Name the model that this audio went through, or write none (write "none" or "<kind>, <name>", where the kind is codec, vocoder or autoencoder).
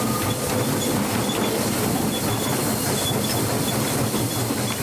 none